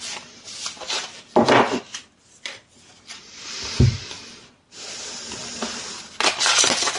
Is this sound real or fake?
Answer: fake